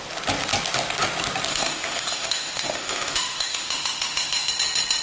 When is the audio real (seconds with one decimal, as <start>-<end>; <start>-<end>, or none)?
0.0-1.5; 4.5-5.0